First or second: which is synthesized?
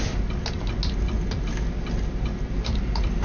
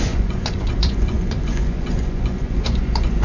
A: second